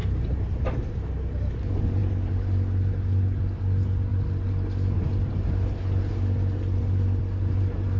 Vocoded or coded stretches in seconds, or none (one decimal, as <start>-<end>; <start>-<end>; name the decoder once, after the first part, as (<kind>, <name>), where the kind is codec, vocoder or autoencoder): none